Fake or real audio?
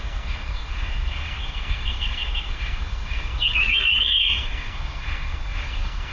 fake